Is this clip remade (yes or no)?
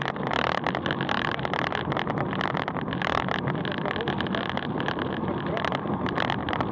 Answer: no